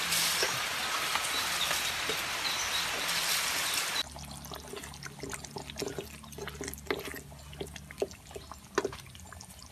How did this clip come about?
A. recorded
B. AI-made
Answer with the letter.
A